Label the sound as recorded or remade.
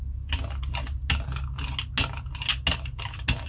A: recorded